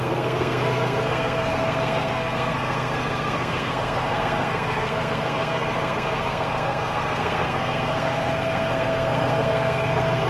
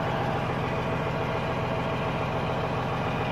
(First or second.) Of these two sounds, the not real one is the first